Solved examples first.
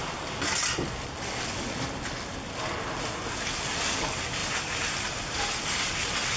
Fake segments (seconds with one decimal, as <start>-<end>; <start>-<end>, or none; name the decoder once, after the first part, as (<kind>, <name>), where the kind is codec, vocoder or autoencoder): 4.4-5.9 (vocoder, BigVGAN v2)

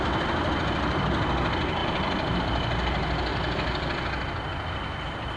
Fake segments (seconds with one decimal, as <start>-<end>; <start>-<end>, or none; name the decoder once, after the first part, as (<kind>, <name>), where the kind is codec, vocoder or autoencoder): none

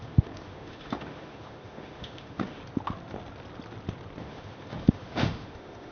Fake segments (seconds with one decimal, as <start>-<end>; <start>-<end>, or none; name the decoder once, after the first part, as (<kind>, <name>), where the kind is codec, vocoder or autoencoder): 0.0-2.6 (autoencoder, DAC-VAE); 4.2-5.9